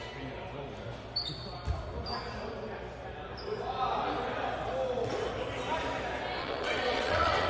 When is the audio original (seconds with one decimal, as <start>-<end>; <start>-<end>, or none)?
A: 0.0-6.4